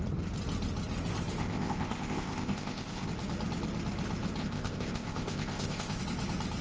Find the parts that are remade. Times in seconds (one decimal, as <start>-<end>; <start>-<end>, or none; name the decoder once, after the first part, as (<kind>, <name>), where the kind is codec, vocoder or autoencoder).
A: 1.4-3.1 (codec, ZipCodec); 4.4-6.0